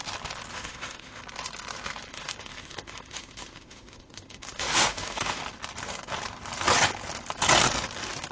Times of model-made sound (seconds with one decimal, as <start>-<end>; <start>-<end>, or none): 0.5-1.2; 2.1-5.4